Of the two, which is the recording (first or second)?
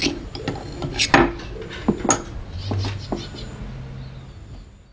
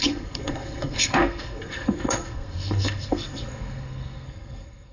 first